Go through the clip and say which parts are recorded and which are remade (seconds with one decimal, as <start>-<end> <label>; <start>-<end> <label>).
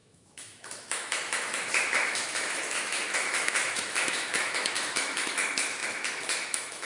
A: 0.0-6.9 remade